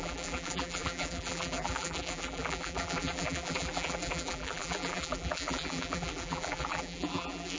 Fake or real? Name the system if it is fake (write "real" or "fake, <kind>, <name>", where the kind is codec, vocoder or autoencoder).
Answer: fake, vocoder, BigVGAN v2